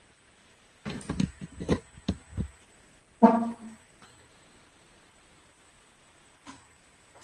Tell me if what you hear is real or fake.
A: fake